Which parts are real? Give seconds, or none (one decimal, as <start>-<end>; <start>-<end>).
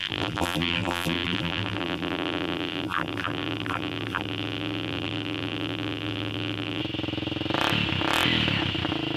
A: 6.8-9.2